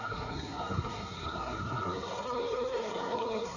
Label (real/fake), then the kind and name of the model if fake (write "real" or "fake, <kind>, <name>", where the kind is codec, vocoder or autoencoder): fake, codec, SNAC